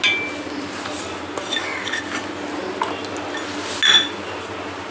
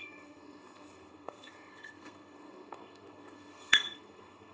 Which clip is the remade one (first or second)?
second